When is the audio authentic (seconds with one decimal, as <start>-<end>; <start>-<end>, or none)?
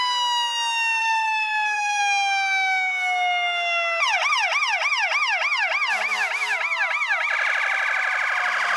0.0-1.0; 2.0-8.8